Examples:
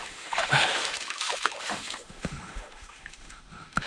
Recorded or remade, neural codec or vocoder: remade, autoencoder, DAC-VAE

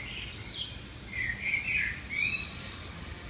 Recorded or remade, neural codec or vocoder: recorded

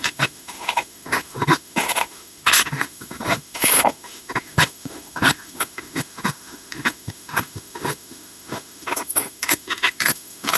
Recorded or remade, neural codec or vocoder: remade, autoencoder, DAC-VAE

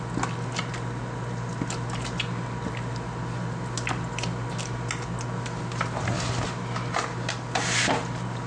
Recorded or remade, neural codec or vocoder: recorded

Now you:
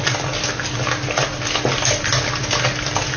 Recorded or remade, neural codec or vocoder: recorded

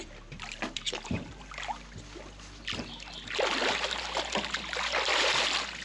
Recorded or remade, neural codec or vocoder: recorded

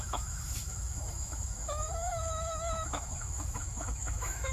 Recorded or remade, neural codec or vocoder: remade, autoencoder, DAC-VAE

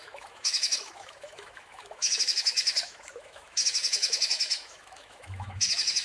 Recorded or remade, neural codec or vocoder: remade, autoencoder, DAC-VAE